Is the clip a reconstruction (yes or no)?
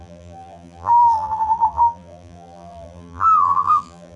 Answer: yes